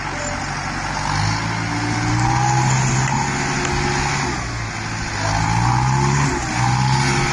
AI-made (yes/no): no